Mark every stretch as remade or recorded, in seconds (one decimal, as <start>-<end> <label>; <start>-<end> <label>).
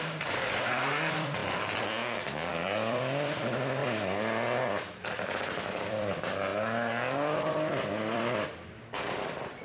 0.0-1.4 remade; 1.4-2.5 recorded; 2.5-3.8 remade; 3.8-4.6 recorded; 4.6-9.6 remade